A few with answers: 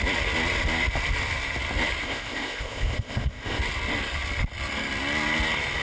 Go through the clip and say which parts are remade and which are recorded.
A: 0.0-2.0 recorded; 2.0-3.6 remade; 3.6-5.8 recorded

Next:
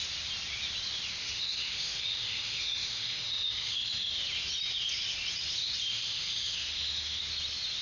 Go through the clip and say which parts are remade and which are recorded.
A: 0.0-1.2 recorded; 1.2-4.2 remade; 4.2-5.9 recorded; 5.9-7.2 remade; 7.2-7.8 recorded

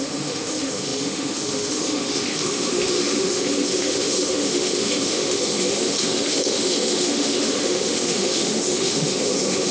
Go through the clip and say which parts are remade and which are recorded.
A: 0.0-9.7 remade

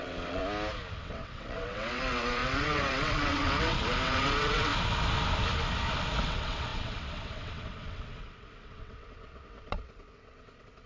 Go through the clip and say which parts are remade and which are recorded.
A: 0.0-0.4 remade; 0.4-1.0 recorded; 1.0-4.7 remade; 4.7-6.2 recorded; 6.2-10.9 remade

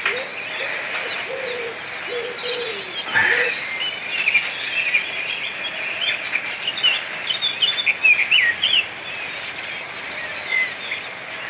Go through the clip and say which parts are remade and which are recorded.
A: 0.0-11.5 recorded

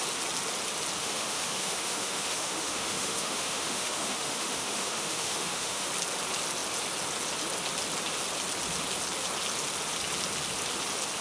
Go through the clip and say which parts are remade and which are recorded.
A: 0.0-1.0 recorded; 1.0-5.9 remade; 5.9-11.2 recorded

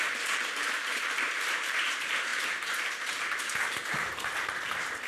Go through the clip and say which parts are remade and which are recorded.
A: 0.0-5.1 remade